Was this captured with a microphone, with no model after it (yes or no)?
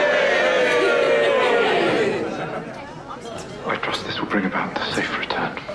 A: yes